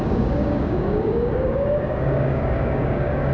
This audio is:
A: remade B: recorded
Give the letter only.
A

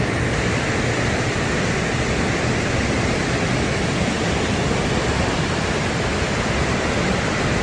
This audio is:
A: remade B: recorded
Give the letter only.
A